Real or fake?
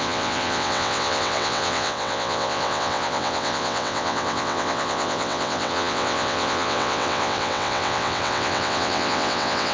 fake